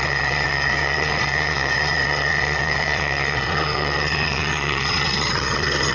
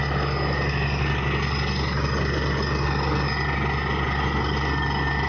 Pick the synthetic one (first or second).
first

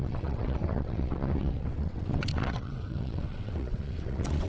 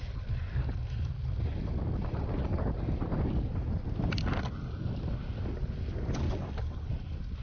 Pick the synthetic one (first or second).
first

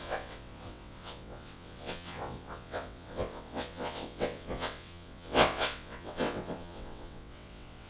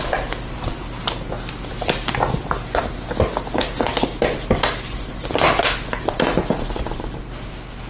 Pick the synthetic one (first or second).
first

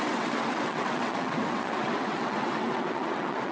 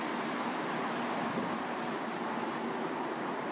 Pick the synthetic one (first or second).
first